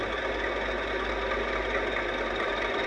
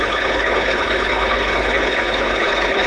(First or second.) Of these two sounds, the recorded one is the first